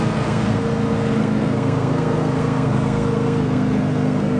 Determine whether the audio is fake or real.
fake